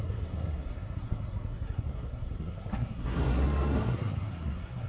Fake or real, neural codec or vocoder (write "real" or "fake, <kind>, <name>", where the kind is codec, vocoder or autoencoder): fake, codec, SNAC